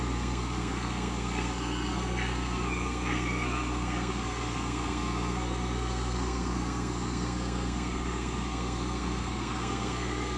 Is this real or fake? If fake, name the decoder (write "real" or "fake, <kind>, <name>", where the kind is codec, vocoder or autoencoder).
fake, codec, SNAC